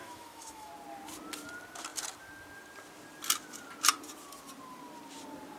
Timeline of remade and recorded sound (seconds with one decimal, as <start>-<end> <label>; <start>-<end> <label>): 0.0-0.7 remade; 0.7-5.6 recorded